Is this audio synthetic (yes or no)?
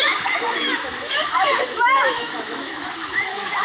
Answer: yes